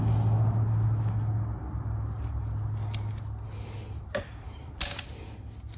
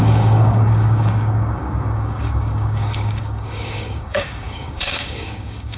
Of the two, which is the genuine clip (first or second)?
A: first